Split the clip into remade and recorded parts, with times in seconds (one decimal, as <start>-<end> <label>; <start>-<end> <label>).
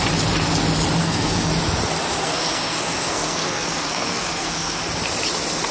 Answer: 0.0-1.0 recorded; 1.0-1.5 remade; 1.5-2.2 recorded; 2.2-4.8 remade; 4.8-5.7 recorded